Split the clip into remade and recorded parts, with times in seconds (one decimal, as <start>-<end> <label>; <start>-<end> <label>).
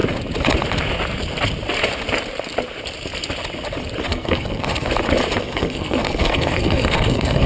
0.0-4.1 recorded; 4.1-4.9 remade; 4.9-5.4 recorded; 5.4-7.5 remade